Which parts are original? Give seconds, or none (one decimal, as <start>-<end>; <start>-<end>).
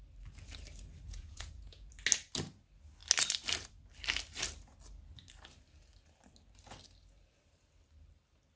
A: 0.0-1.1; 1.9-8.6